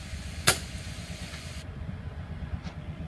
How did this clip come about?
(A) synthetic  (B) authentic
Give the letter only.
A